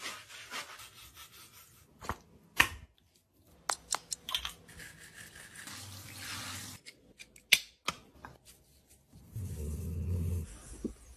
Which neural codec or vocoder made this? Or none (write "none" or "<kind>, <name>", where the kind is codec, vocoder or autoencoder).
none